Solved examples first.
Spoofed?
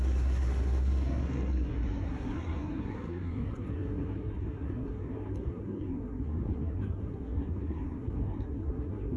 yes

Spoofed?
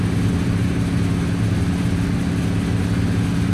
no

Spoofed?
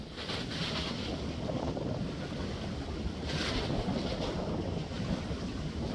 yes